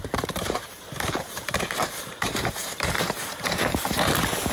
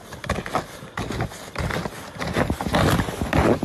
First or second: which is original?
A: second